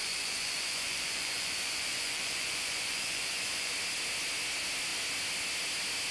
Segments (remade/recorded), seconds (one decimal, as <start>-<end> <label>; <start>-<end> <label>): 0.0-3.7 remade; 3.7-6.1 recorded